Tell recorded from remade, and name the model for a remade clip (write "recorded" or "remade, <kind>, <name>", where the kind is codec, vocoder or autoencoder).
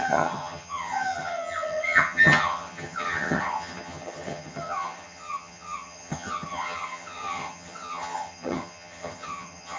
remade, vocoder, HiFi-GAN